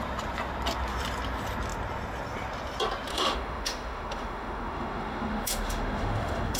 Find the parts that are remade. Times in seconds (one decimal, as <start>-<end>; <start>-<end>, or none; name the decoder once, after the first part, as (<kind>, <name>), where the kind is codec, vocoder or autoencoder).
3.1-6.6 (autoencoder, DAC-VAE)